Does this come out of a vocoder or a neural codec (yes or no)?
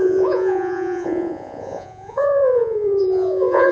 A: yes